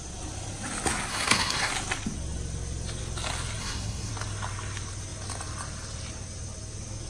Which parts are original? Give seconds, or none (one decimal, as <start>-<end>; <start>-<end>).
0.0-1.1; 1.7-3.6; 4.1-7.1

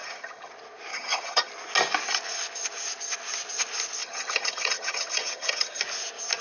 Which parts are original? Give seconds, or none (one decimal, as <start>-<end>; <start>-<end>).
0.5-0.9; 1.5-4.0; 5.8-6.4